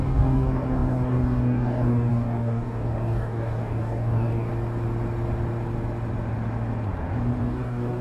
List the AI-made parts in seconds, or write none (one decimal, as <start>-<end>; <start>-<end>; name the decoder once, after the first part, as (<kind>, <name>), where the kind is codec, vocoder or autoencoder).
0.0-4.5 (codec, DAC); 7.4-8.0